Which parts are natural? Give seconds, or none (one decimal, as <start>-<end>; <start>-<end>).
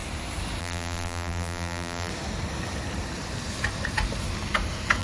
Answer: 0.0-0.6; 2.1-5.0